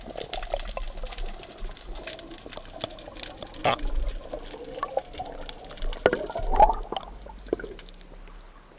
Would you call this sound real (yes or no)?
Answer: yes